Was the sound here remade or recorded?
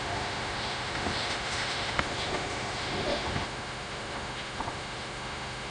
remade